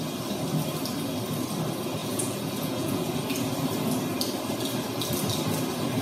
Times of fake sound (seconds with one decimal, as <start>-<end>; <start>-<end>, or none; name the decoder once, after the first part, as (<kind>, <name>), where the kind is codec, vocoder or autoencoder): 2.0-3.1 (vocoder, Vocos)

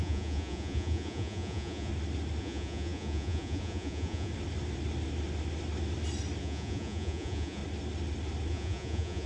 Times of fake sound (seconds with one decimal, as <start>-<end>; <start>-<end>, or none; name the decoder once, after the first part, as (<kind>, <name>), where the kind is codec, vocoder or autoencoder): 0.0-1.9 (vocoder, Vocos); 2.4-4.3; 6.4-7.6; 8.5-9.3

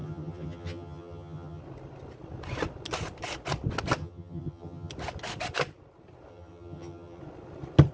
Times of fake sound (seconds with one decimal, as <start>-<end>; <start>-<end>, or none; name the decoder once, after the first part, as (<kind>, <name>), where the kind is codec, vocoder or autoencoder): 0.0-1.6 (vocoder, HiFi-GAN); 4.0-4.9; 6.3-7.2

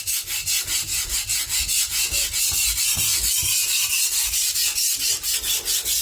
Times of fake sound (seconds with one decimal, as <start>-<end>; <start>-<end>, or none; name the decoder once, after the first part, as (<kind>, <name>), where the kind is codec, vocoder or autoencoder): 0.9-2.4 (vocoder, Vocos)